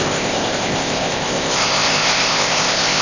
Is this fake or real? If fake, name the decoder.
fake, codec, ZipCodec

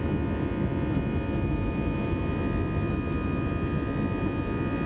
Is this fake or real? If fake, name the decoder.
real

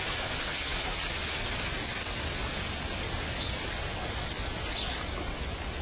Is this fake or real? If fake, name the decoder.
real